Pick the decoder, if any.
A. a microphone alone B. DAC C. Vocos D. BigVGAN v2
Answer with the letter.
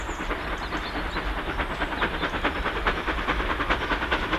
D